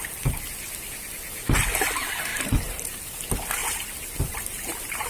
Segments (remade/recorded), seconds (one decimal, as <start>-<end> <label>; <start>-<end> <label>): 0.0-2.3 recorded; 2.3-3.0 remade; 3.0-3.6 recorded; 3.6-5.1 remade